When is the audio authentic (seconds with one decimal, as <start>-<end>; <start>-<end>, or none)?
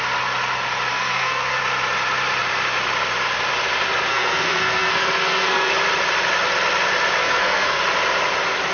0.0-0.9; 1.6-4.1; 5.7-7.2; 7.8-8.7